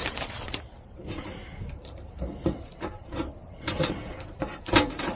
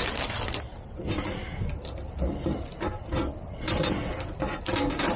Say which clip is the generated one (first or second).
first